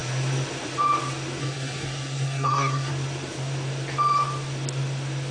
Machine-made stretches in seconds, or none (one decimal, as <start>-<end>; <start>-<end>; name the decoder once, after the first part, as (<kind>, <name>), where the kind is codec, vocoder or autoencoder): 1.4-2.9 (codec, SNAC)